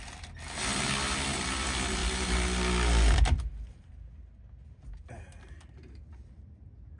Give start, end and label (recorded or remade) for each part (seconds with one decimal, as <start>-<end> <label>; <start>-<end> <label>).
0.0-7.0 recorded